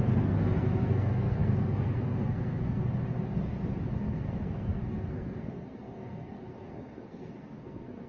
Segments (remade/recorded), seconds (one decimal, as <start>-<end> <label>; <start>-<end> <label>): 0.0-2.9 remade; 2.9-3.9 recorded; 3.9-8.1 remade